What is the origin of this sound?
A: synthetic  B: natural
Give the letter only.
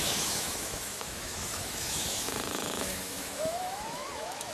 A